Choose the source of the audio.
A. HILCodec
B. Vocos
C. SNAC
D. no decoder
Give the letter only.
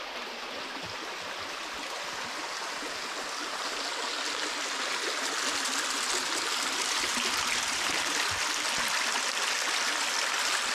D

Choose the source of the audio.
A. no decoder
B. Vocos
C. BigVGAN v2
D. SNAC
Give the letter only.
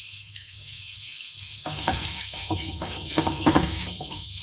D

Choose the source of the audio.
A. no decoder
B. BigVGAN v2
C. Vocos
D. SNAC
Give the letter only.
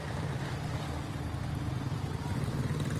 A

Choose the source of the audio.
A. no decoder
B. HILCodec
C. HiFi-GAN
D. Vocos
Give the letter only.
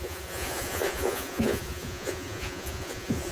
D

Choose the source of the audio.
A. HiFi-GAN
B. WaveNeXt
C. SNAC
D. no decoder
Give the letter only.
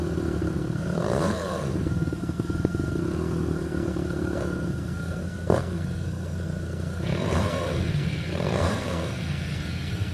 C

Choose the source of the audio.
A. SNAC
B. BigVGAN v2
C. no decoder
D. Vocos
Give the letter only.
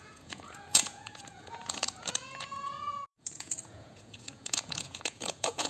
D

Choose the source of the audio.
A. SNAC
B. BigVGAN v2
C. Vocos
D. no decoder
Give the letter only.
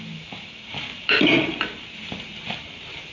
B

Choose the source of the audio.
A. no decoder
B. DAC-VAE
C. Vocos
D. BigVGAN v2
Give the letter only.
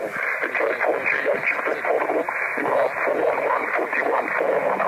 A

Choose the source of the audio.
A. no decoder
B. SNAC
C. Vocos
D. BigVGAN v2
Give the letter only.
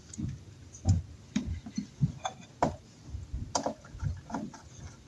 D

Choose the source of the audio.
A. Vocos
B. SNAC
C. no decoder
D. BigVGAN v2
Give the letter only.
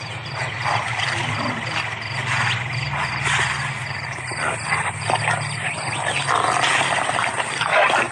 C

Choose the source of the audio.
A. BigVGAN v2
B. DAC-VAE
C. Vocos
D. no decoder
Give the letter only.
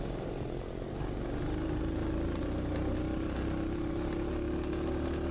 D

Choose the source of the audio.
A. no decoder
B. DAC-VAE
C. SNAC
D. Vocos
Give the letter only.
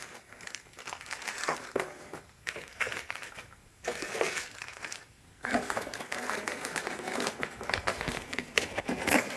C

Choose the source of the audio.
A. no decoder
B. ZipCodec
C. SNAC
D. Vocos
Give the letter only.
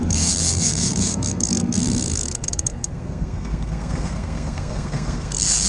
C